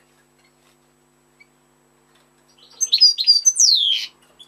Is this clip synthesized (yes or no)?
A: no